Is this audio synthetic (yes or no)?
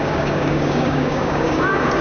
yes